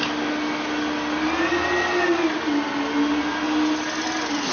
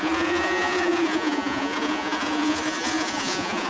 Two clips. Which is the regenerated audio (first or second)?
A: second